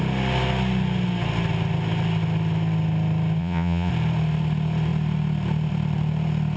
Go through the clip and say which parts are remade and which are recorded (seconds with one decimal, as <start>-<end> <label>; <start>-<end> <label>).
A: 0.0-3.4 recorded; 3.4-3.9 remade; 3.9-6.6 recorded